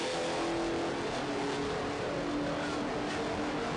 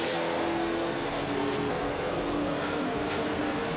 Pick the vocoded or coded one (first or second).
second